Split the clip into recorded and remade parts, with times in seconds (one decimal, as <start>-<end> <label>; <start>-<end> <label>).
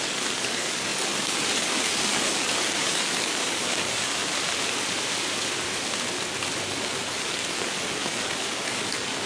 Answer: 0.0-4.2 remade; 4.2-6.7 recorded; 6.7-9.3 remade